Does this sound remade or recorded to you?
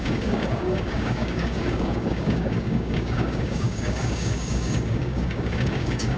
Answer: remade